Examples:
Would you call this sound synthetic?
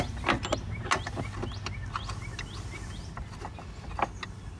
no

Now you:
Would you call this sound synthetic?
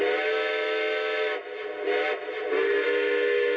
no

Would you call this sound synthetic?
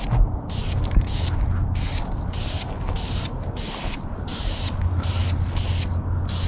no